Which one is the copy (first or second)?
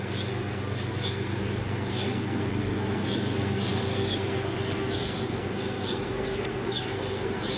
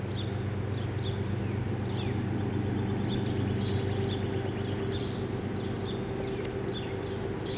first